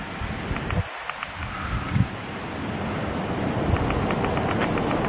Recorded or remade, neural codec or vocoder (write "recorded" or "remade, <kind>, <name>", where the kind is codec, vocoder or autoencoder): recorded